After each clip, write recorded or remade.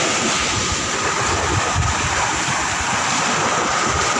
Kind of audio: remade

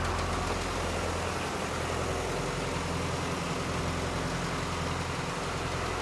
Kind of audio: recorded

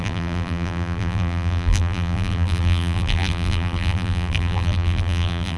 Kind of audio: remade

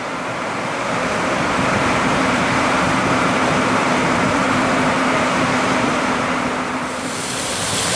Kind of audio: remade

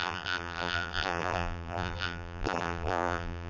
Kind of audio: remade